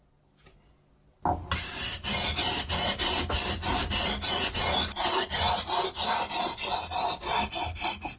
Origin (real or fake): real